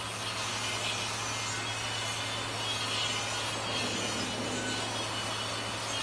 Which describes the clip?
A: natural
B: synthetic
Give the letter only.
A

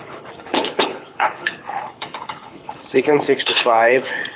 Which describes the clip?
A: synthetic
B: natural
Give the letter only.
A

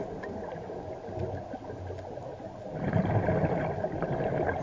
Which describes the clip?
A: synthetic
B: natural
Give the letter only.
B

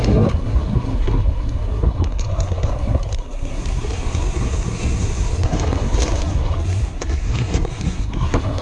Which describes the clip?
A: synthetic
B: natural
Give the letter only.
A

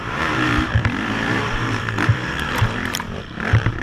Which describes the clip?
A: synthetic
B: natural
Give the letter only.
A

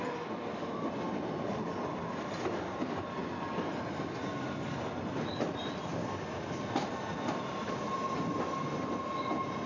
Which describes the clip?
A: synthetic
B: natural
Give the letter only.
B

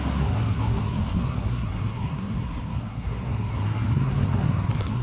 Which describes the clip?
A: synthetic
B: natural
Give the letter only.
A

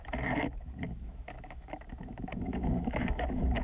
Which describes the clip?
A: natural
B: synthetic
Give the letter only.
B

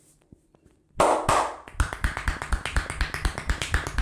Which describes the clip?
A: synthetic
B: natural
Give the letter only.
B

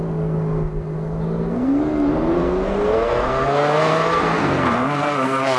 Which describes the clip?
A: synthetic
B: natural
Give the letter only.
A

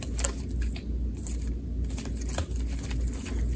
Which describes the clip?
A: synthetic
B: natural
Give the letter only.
B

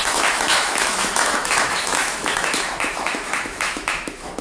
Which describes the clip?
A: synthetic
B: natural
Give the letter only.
A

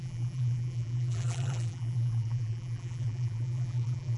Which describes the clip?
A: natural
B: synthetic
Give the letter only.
B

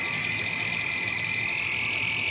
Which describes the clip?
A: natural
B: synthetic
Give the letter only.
A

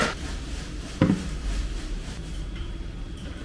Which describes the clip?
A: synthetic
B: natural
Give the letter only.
A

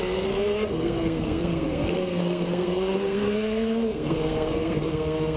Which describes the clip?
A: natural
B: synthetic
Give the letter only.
B